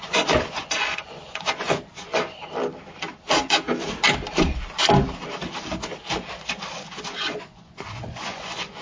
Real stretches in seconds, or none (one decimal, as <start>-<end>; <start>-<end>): 2.4-7.0

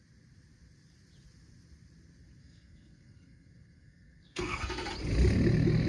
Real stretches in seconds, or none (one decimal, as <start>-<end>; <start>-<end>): 0.0-2.4; 4.9-5.9